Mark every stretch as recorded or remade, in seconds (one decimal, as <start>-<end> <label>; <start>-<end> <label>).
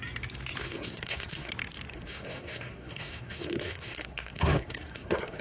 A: 0.0-0.6 recorded; 0.6-1.5 remade; 1.5-1.9 recorded; 1.9-5.4 remade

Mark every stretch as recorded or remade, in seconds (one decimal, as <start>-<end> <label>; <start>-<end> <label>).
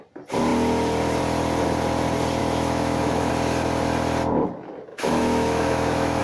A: 0.0-2.4 recorded; 2.4-3.3 remade; 3.3-4.9 recorded; 4.9-6.2 remade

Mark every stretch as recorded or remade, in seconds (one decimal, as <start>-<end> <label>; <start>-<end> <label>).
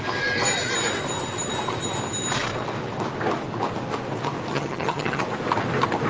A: 0.0-4.5 recorded; 4.5-5.2 remade; 5.2-6.1 recorded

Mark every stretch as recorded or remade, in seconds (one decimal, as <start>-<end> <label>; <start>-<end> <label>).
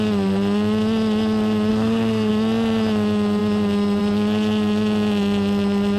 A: 0.0-1.7 recorded; 1.7-2.3 remade; 2.3-6.0 recorded